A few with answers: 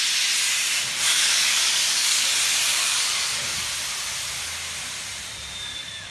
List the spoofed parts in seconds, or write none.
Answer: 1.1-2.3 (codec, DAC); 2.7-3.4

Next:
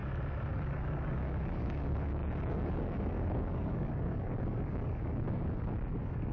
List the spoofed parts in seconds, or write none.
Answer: 0.5-6.3 (codec, DAC)